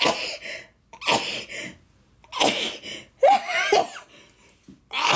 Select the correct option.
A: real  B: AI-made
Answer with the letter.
A